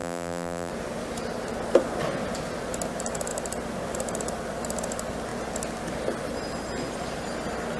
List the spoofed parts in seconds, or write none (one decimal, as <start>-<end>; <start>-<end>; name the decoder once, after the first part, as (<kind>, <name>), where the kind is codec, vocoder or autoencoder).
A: 0.0-0.7 (vocoder, BigVGAN v2)